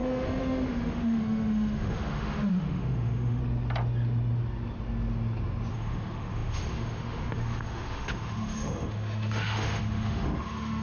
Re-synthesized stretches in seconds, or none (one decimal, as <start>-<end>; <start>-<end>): 0.0-3.4; 5.7-10.8